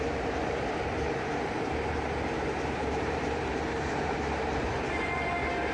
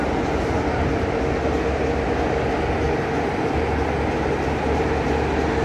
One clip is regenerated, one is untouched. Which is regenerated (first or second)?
first